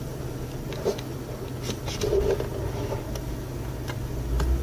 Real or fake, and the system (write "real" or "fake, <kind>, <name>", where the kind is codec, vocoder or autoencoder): real